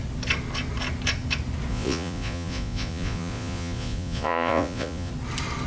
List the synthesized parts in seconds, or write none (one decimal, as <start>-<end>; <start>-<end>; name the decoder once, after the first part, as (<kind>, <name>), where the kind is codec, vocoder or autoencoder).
1.7-5.1 (vocoder, Vocos)